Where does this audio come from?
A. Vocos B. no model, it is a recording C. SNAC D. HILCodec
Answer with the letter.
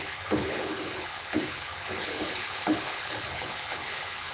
D